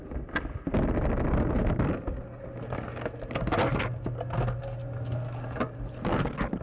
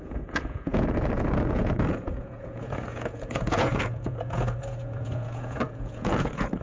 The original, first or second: first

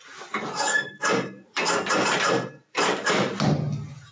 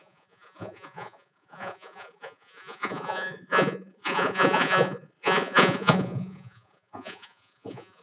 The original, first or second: first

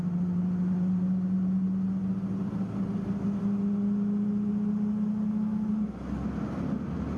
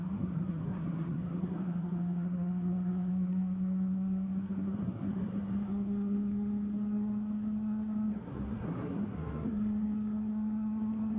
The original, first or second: first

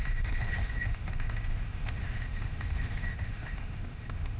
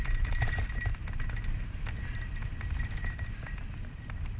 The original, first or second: second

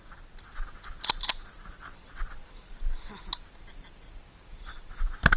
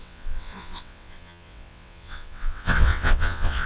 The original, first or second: first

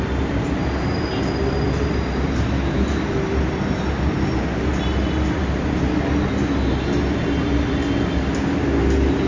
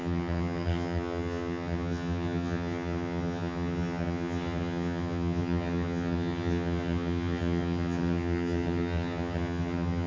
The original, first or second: first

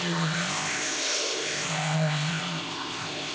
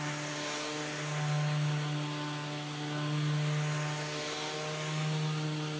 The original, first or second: second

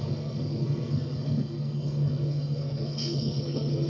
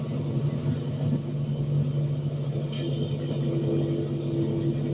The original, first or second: second